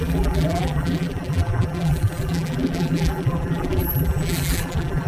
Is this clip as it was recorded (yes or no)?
no